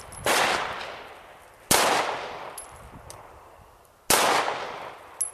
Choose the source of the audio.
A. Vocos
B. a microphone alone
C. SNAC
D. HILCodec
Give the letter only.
B